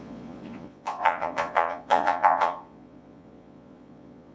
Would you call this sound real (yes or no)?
no